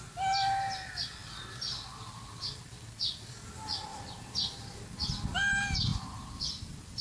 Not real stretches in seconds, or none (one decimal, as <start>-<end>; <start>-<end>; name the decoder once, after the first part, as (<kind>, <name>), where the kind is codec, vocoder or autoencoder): 3.9-4.8 (vocoder, BigVGAN v2)